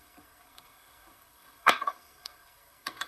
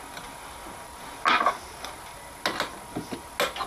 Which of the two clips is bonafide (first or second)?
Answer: second